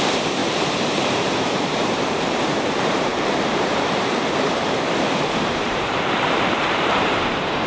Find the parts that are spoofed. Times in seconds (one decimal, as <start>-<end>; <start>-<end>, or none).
0.0-7.7